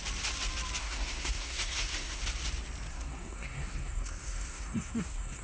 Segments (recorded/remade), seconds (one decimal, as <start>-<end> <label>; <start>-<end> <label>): 0.0-0.8 recorded; 0.8-2.2 remade; 2.2-2.9 recorded; 2.9-5.4 remade